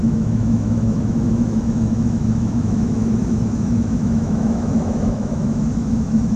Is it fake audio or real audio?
fake